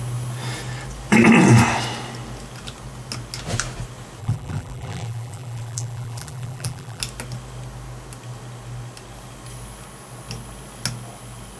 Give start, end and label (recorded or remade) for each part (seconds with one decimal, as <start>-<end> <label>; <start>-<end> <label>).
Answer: 0.0-4.2 recorded; 4.2-7.0 remade; 7.0-11.6 recorded